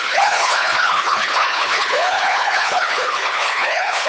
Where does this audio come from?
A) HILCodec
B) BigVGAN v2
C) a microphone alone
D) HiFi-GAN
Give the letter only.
A